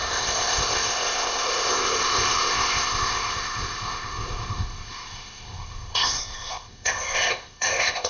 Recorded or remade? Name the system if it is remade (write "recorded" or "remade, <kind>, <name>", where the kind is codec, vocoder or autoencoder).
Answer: remade, codec, ZipCodec